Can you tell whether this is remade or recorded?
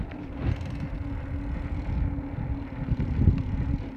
recorded